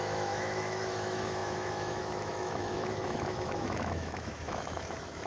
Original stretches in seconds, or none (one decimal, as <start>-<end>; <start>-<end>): none